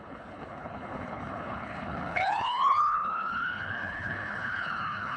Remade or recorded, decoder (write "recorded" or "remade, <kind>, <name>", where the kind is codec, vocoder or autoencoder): remade, codec, HILCodec